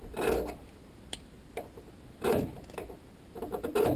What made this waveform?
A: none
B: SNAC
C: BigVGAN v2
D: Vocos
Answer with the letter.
A